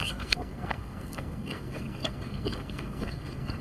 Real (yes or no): no